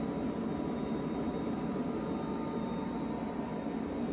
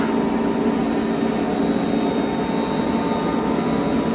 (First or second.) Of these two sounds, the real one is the second